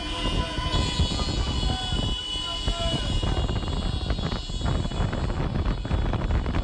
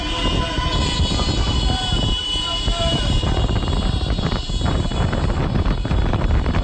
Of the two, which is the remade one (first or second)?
second